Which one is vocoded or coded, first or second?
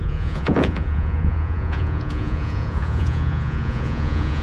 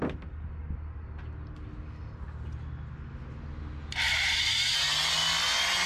first